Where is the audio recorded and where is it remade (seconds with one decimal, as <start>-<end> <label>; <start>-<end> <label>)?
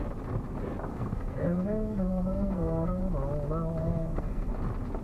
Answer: 0.0-0.9 recorded; 0.9-3.0 remade; 3.0-3.8 recorded; 3.8-4.5 remade; 4.5-5.0 recorded